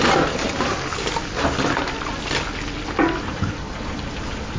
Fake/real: real